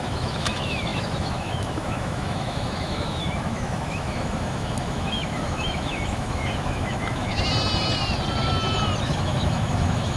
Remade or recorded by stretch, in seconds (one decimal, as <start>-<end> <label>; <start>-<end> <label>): 0.0-7.3 remade; 7.3-9.0 recorded; 9.0-10.2 remade